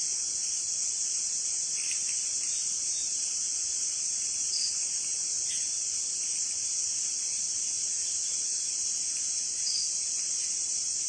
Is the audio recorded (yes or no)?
yes